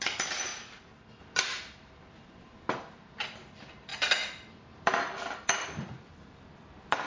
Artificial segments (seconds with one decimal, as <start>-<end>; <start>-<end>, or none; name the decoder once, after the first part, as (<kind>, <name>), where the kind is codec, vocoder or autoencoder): 0.0-0.5 (vocoder, BigVGAN v2); 1.2-3.9; 4.5-7.1